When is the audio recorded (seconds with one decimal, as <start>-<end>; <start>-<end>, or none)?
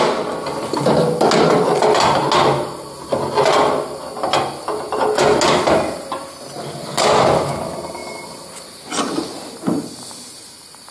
0.0-10.9